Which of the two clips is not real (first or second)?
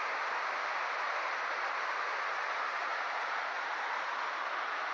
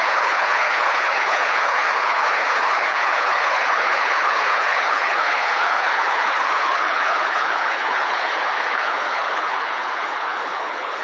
second